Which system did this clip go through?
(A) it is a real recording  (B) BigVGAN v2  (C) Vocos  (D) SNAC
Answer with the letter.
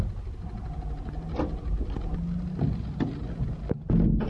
A